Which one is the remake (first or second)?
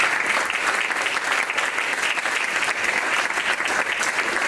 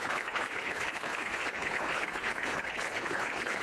second